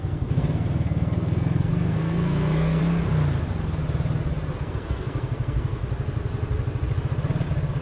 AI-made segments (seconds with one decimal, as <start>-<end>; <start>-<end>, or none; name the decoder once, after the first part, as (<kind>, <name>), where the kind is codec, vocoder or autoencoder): 0.0-2.8 (codec, SNAC); 4.6-5.8